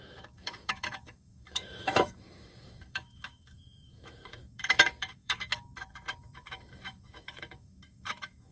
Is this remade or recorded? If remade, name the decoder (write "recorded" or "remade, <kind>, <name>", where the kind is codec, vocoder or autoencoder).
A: remade, autoencoder, DAC-VAE